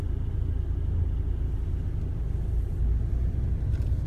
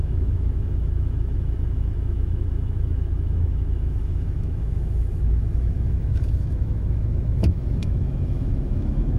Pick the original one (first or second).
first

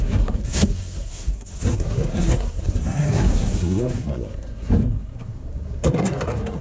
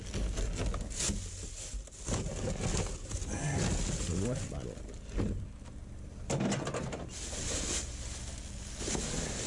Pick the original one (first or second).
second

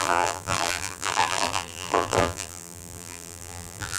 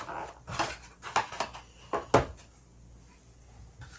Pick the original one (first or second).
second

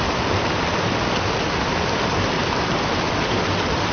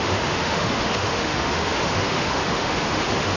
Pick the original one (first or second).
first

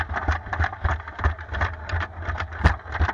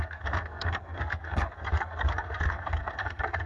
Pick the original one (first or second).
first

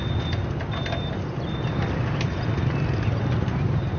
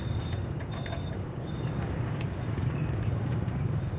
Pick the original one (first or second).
first